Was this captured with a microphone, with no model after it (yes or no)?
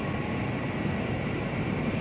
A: yes